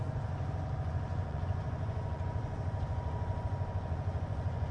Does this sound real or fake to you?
fake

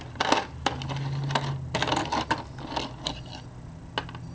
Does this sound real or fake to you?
real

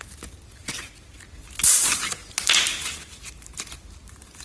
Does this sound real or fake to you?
real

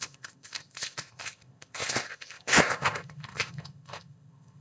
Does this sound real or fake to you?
fake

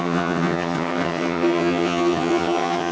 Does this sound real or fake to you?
fake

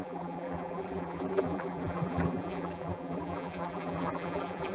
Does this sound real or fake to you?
fake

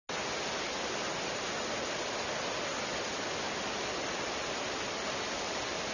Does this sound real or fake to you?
real